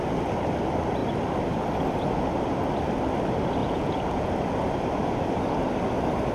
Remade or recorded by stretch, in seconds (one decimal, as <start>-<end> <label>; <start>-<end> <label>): 0.0-3.6 recorded; 3.6-4.3 remade; 4.3-6.3 recorded